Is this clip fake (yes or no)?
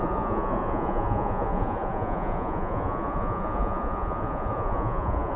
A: yes